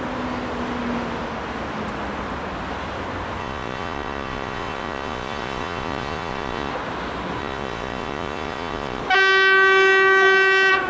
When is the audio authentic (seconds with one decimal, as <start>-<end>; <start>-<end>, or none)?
0.0-3.4; 6.7-7.4; 9.0-10.9